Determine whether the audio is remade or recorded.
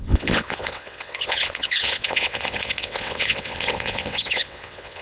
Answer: remade